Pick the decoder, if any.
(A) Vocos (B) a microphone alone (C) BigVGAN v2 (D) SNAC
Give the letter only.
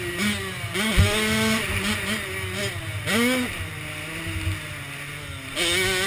B